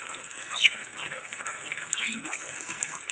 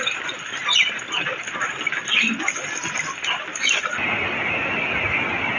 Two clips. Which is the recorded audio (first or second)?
second